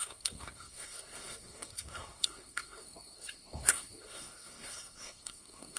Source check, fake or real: fake